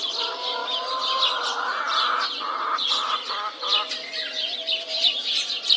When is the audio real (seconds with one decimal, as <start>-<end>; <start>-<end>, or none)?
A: 0.0-5.8